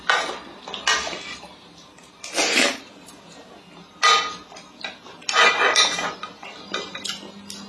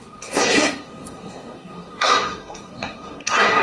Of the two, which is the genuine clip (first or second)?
first